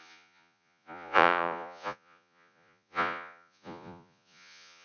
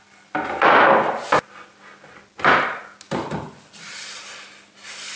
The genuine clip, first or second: second